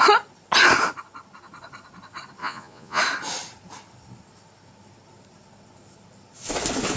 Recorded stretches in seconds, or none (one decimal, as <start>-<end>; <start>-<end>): 0.0-2.4; 3.0-7.0